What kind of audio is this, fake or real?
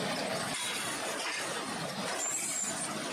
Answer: fake